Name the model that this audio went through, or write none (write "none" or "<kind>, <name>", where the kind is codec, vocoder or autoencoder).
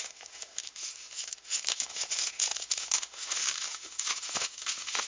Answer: autoencoder, DAC-VAE